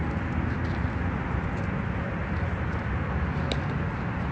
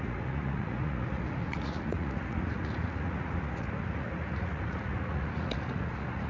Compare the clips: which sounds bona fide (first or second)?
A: first